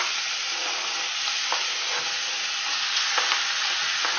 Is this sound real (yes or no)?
yes